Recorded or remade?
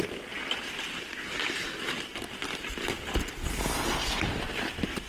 recorded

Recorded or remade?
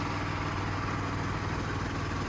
recorded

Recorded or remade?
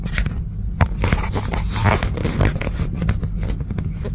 recorded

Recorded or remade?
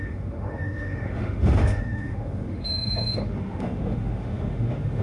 remade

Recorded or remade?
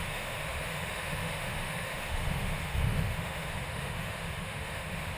remade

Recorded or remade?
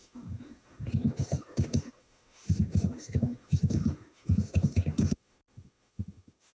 remade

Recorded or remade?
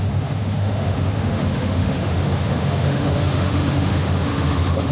remade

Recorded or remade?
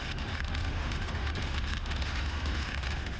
remade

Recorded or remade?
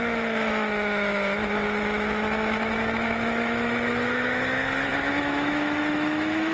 remade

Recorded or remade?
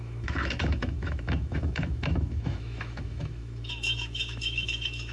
remade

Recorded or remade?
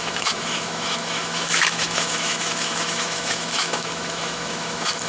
remade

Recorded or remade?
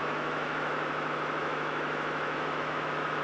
remade